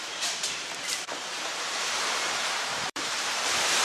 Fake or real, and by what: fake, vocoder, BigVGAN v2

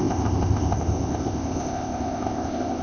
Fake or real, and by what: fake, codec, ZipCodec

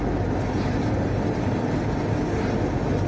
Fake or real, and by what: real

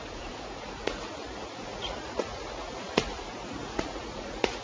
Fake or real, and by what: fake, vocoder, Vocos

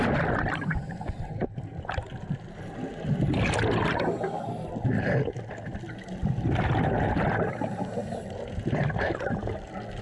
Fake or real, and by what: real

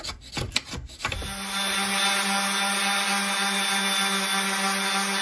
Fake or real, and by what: real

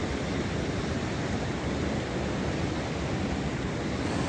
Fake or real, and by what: real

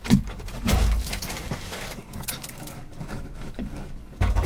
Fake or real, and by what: fake, codec, DAC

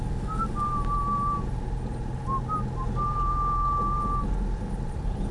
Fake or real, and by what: real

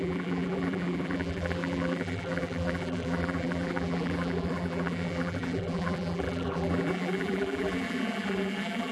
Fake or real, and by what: fake, vocoder, BigVGAN v2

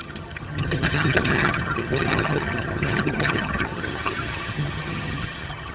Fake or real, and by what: fake, vocoder, HiFi-GAN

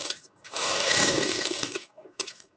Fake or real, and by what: fake, codec, DAC